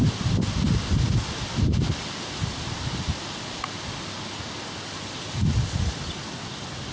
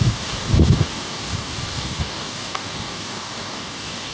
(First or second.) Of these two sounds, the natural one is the first